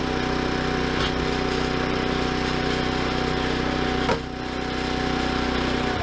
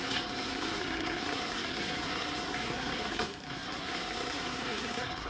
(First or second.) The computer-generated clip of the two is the second